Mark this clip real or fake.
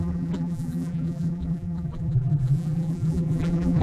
fake